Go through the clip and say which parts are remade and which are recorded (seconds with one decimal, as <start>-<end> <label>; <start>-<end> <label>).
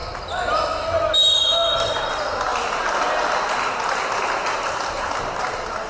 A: 0.0-5.9 recorded